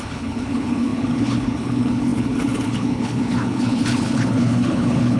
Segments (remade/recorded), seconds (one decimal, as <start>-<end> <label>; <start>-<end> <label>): 0.0-5.2 remade